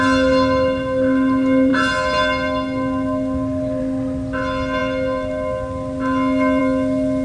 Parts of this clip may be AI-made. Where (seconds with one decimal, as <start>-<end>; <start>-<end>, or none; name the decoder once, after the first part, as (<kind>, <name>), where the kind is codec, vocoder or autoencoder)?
none

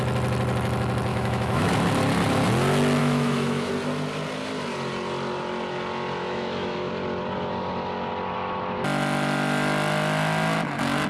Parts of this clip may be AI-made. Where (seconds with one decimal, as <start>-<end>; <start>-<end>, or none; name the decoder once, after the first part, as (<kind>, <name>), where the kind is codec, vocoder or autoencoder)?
1.1-1.7 (autoencoder, DAC-VAE); 3.0-3.7; 6.2-6.9

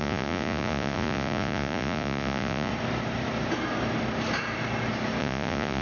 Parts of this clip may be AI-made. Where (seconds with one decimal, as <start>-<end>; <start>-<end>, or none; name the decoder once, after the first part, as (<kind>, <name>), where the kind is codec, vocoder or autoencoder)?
0.0-2.7 (vocoder, Vocos); 5.2-5.8

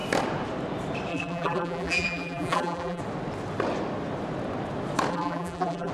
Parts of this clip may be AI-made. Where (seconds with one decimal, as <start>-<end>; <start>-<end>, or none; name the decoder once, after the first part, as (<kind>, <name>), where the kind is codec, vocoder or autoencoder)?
1.1-3.0 (vocoder, BigVGAN v2); 5.1-5.9

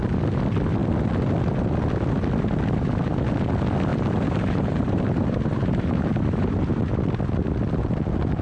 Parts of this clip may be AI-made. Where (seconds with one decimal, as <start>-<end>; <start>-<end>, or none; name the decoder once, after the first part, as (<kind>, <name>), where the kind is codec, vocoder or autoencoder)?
3.9-6.9 (vocoder, BigVGAN v2)

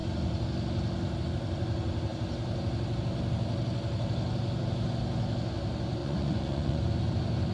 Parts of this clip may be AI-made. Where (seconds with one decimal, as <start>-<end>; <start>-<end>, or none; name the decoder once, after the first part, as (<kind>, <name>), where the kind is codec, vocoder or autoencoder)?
6.0-6.8 (vocoder, Vocos)

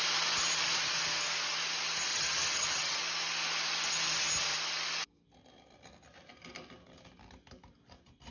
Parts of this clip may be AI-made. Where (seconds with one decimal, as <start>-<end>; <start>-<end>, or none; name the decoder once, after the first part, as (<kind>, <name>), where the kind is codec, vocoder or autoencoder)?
2.1-3.0 (vocoder, HiFi-GAN)